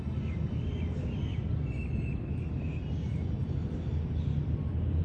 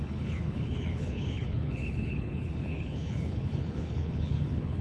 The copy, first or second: second